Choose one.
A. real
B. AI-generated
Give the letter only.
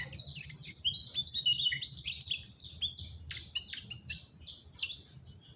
A